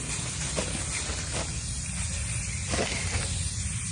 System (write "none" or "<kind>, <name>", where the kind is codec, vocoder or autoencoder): none